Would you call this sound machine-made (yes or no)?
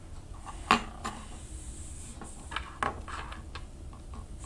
no